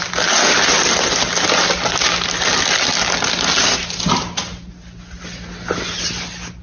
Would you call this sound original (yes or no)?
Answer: yes